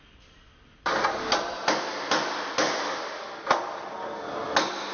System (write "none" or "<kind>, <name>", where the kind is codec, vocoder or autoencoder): none